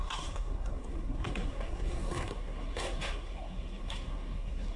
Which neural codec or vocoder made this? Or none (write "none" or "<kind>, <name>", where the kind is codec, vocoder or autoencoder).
codec, SNAC